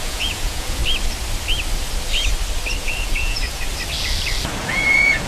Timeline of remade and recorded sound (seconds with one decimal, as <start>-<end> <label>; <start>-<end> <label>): 0.0-0.8 remade; 0.8-2.8 recorded; 2.8-3.7 remade; 3.7-4.6 recorded; 4.6-5.3 remade